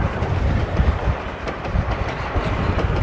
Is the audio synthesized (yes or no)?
no